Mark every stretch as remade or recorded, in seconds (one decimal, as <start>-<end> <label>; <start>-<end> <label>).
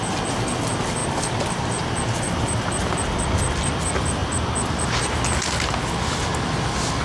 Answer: 0.0-7.0 recorded